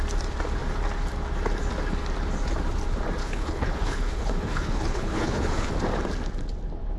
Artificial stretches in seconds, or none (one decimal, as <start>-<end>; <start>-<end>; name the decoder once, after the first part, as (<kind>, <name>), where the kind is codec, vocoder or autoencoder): 3.2-5.7 (codec, HILCodec)